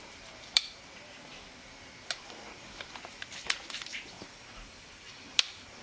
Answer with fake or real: fake